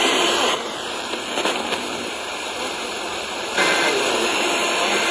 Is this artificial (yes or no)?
yes